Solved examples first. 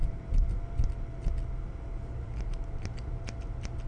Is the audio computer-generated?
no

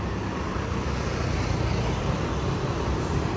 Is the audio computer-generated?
yes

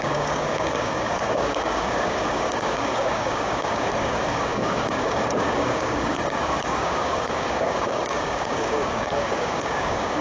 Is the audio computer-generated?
yes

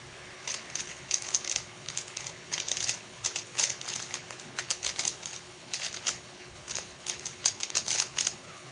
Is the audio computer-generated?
yes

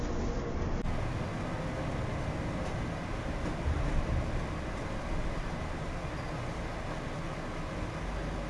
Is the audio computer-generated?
no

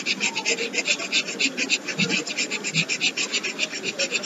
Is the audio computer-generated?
no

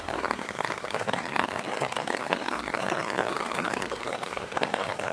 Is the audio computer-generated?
yes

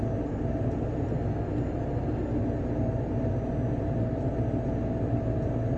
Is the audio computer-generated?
no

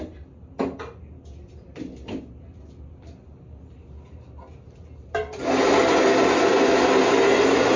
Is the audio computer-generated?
no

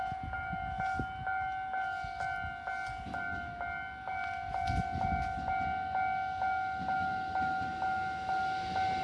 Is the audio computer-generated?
no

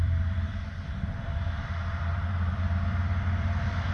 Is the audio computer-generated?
yes